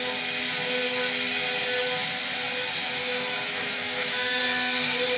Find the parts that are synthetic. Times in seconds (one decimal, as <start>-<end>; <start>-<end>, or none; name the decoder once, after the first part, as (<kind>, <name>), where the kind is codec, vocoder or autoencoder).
3.0-4.4 (autoencoder, DAC-VAE)